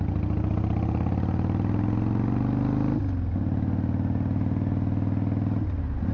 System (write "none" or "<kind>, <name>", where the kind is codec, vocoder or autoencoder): none